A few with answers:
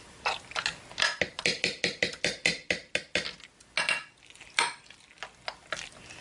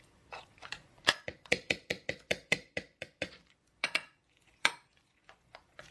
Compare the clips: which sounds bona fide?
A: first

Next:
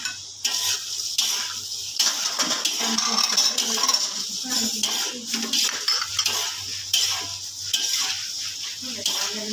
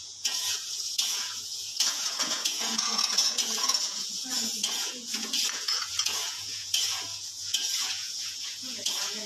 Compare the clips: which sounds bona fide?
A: first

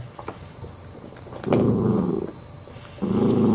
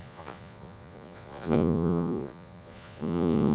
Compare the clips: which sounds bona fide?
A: first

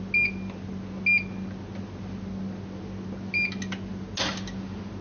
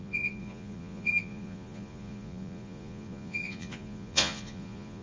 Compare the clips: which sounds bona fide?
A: first